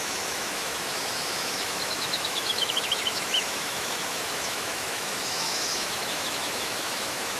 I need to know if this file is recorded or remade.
remade